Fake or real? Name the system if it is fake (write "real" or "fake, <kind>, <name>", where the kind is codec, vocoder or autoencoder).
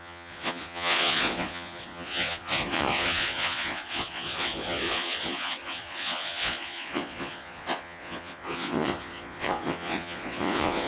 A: fake, vocoder, Vocos